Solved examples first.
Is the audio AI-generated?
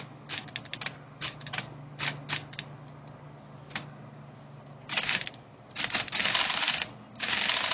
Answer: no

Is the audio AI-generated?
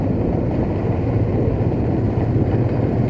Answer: no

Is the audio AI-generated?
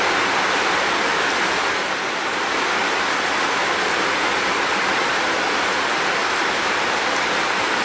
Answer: no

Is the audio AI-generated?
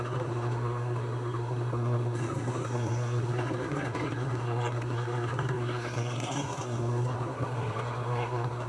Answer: yes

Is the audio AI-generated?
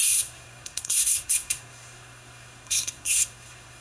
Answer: yes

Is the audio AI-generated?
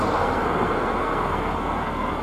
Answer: yes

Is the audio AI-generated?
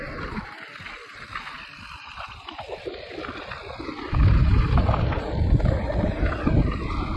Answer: no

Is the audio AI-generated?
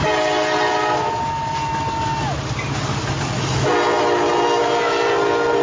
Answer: no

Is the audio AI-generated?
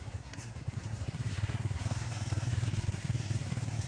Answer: yes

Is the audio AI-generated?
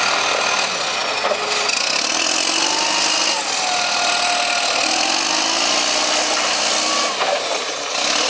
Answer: no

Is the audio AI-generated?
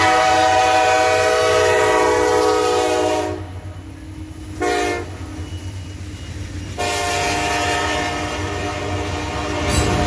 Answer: no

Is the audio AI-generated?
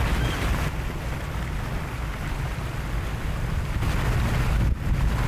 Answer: no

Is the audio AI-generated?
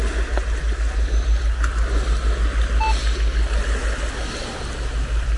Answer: no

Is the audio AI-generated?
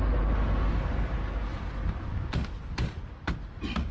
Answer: no